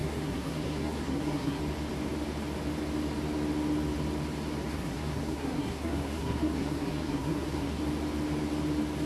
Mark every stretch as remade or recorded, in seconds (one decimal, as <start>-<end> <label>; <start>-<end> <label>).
0.0-1.6 remade; 1.6-4.7 recorded; 4.7-7.8 remade; 7.8-9.1 recorded